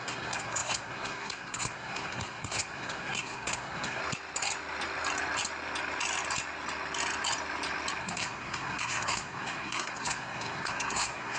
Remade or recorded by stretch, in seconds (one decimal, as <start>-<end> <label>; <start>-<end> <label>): 0.0-4.0 remade; 4.0-8.0 recorded; 8.0-11.4 remade